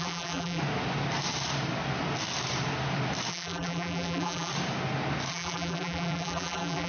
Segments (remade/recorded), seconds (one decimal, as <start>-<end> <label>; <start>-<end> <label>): 0.0-0.6 remade; 0.6-3.3 recorded; 3.3-4.5 remade; 4.5-5.3 recorded; 5.3-6.9 remade